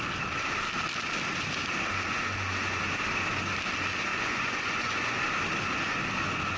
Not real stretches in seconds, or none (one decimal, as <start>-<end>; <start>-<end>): 2.1-2.8; 4.1-5.2